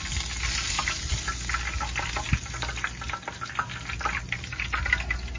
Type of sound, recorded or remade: recorded